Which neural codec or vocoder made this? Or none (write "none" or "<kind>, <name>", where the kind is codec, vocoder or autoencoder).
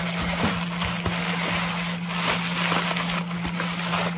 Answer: none